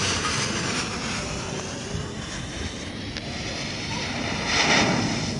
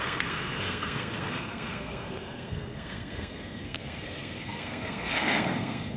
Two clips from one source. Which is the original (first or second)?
first